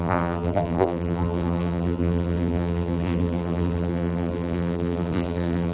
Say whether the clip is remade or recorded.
remade